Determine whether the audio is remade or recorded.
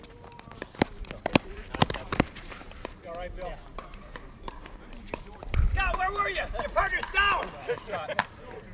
remade